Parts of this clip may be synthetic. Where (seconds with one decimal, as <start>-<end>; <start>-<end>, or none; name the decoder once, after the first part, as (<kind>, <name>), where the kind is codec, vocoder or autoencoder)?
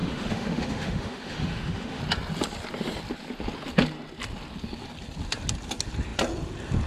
0.0-2.0 (autoencoder, DAC-VAE)